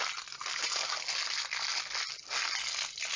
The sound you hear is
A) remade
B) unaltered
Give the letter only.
B